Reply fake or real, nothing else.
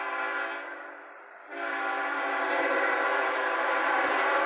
fake